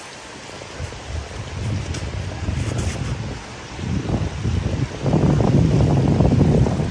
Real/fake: real